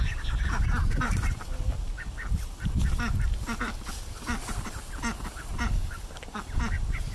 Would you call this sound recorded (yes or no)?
yes